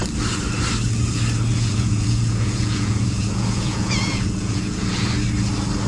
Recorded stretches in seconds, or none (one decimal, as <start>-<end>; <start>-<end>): 0.0-1.5; 5.0-5.9